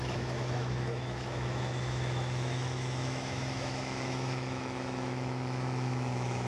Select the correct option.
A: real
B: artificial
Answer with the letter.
B